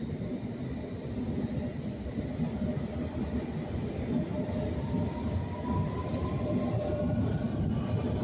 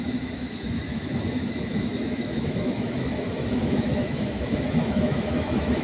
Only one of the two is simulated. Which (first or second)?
second